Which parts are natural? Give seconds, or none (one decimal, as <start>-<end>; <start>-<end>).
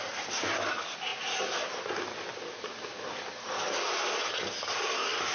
0.0-5.3